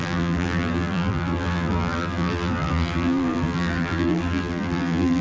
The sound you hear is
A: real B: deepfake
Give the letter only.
B